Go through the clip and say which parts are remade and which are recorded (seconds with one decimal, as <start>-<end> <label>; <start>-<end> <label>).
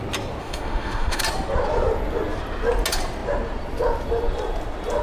0.0-0.4 recorded; 0.4-1.2 remade; 1.2-5.0 recorded